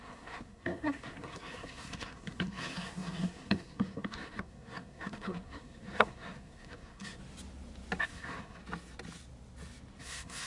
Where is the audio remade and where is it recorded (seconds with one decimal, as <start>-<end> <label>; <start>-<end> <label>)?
0.0-7.2 remade; 7.2-8.0 recorded; 8.0-8.6 remade; 8.6-10.0 recorded; 10.0-10.5 remade